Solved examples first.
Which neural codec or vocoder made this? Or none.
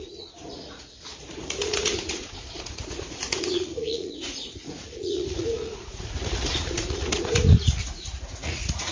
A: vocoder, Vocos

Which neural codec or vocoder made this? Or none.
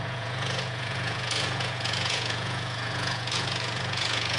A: vocoder, Vocos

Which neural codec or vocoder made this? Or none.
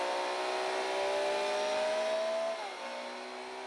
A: none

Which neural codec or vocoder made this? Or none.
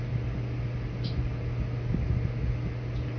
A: none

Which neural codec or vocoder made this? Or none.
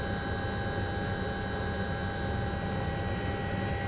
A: none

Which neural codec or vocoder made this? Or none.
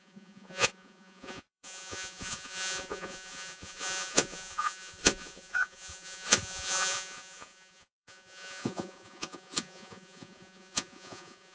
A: vocoder, Vocos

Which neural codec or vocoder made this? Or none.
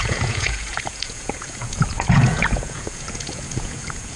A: vocoder, Vocos